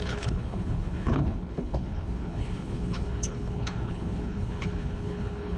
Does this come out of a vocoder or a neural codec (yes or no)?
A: yes